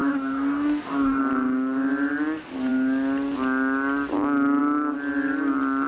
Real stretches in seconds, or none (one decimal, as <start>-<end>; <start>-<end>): 1.2-5.9